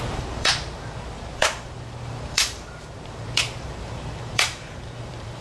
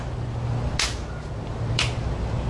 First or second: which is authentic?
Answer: second